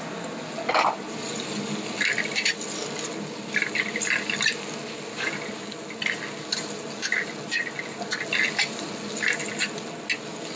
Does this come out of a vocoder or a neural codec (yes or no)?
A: no